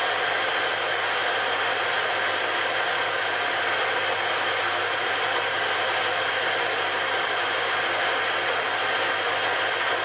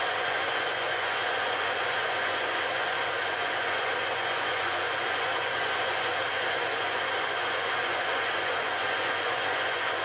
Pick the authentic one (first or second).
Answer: first